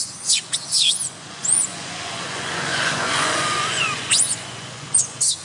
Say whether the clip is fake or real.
fake